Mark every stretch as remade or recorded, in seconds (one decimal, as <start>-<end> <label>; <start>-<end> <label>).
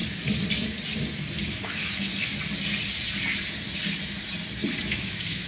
0.0-1.5 recorded; 1.5-2.1 remade; 2.1-4.8 recorded; 4.8-5.5 remade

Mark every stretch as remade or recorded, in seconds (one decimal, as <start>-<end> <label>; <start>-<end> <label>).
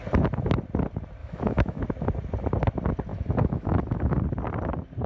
0.0-1.2 recorded; 1.2-1.8 remade; 1.8-3.1 recorded; 3.1-4.2 remade; 4.2-5.1 recorded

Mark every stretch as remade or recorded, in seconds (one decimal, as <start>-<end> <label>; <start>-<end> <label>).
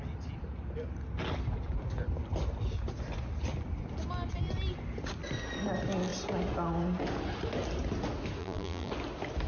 0.0-8.4 recorded; 8.4-8.9 remade; 8.9-9.5 recorded